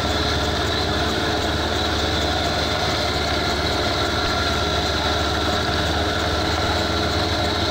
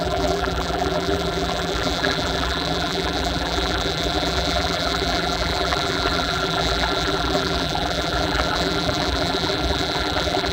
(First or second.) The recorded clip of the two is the first